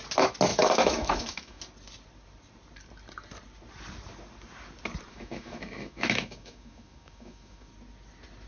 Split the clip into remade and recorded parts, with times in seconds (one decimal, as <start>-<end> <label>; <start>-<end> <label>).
0.0-0.5 recorded; 0.5-1.6 remade; 1.6-5.1 recorded; 5.1-7.7 remade; 7.7-8.5 recorded